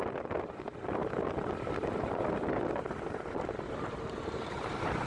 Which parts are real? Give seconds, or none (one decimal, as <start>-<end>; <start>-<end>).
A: 0.0-5.1